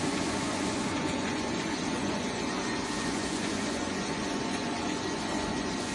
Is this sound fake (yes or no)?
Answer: yes